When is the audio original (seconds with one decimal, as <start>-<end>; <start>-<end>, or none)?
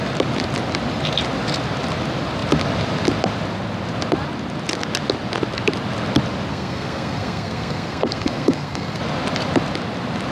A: 0.0-6.5; 9.0-10.3